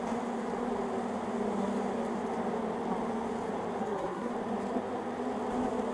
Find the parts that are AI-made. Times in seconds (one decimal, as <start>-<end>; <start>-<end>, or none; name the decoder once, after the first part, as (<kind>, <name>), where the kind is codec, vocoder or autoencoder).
3.8-4.3 (codec, SNAC)